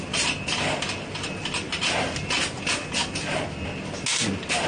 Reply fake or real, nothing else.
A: real